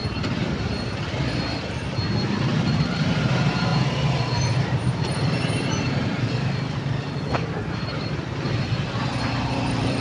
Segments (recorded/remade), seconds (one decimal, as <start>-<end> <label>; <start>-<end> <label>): 0.0-3.7 remade; 3.7-5.7 recorded; 5.7-10.0 remade